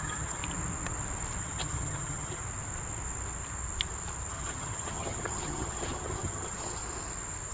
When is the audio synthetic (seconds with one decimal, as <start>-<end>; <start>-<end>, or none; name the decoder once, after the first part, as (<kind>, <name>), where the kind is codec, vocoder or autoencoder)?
0.0-0.4 (vocoder, HiFi-GAN); 1.4-2.4; 4.3-6.8